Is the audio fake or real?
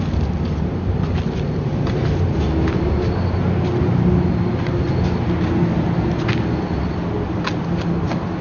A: real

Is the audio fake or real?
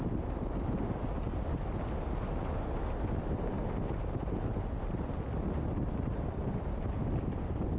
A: real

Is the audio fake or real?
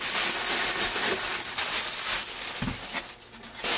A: real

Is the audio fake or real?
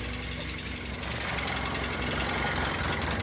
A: real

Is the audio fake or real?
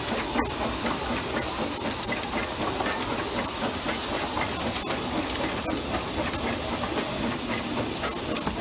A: real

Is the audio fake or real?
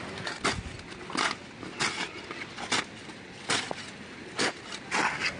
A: real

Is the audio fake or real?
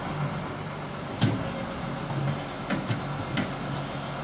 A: real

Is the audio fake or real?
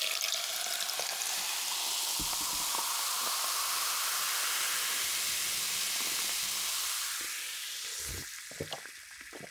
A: real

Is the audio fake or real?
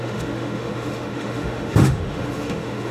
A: fake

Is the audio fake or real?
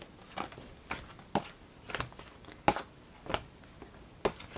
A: real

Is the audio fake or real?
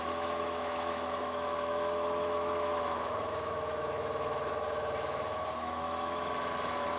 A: fake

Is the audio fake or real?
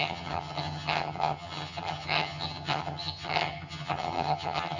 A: fake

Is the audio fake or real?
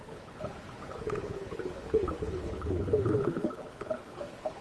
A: fake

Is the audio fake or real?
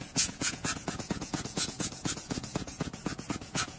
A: fake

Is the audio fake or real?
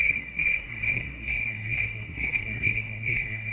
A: fake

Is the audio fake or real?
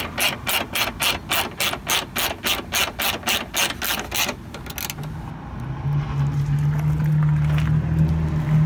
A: real